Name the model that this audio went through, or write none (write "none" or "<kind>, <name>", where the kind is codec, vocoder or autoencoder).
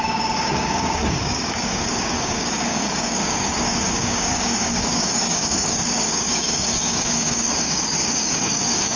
codec, DAC